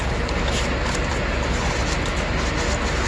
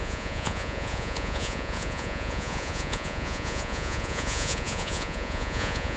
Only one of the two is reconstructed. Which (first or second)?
second